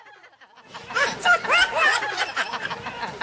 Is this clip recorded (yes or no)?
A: yes